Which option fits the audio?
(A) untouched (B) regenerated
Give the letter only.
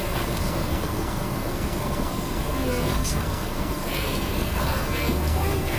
B